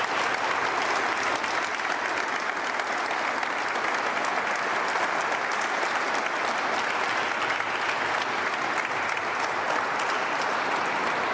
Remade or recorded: recorded